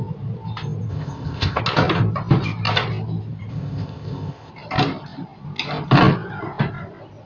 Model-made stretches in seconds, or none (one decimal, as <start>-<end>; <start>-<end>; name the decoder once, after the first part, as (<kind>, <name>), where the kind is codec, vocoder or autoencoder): 0.9-1.6 (codec, ZipCodec); 3.5-4.5